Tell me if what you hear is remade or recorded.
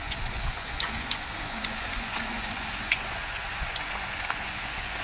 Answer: remade